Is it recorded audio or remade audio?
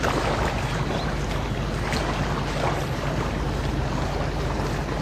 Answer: recorded